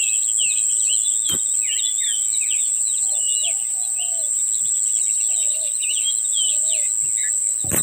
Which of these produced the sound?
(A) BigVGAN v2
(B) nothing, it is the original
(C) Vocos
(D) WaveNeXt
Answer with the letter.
B